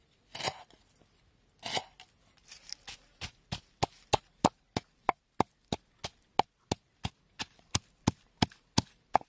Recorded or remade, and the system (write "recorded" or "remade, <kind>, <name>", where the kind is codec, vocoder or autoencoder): recorded